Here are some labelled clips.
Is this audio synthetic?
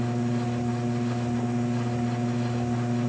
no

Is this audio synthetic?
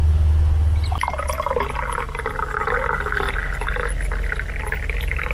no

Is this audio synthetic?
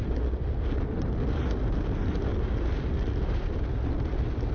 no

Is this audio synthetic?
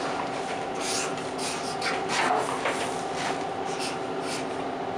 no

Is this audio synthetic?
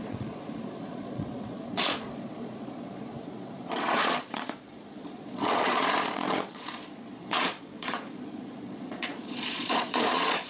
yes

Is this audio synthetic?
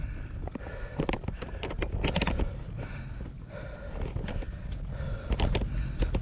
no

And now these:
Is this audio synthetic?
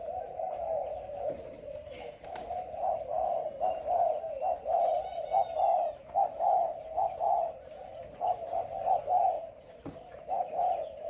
yes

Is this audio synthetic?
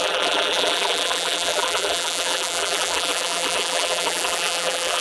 yes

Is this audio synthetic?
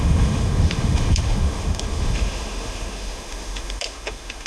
yes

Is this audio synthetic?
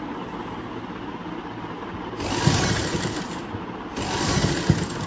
no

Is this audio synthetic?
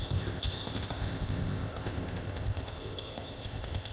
yes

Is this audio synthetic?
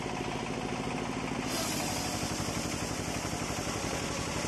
no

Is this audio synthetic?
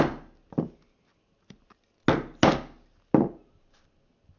no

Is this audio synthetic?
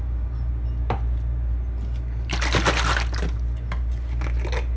no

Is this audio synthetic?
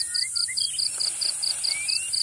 no